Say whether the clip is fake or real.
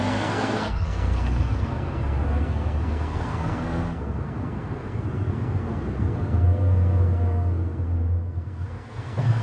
fake